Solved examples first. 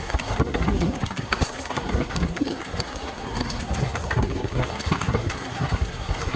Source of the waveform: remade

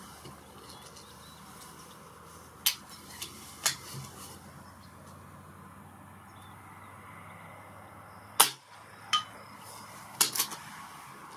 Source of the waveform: recorded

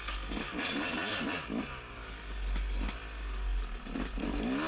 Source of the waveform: recorded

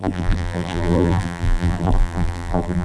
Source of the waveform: remade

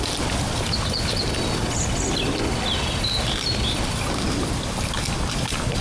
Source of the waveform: recorded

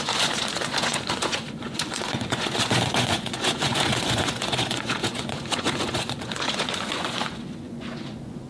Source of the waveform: remade